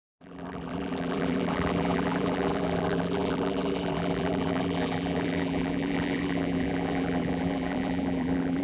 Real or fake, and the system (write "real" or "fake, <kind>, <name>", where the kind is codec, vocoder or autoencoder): fake, vocoder, BigVGAN v2